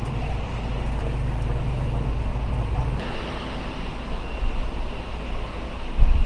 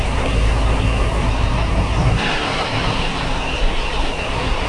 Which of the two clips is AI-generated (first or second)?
second